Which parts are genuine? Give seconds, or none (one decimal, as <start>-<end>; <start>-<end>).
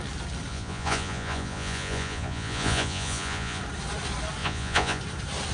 0.0-0.5; 3.6-4.4; 5.0-5.5